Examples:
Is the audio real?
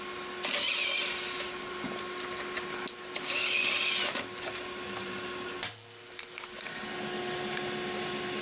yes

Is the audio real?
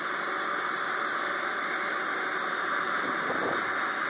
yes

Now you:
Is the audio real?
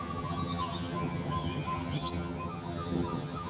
no